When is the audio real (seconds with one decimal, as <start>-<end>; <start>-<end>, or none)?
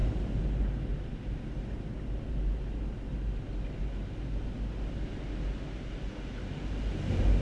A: 0.0-7.4